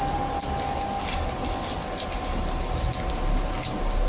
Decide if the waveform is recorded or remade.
recorded